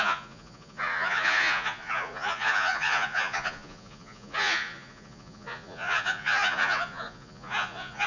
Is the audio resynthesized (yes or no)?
yes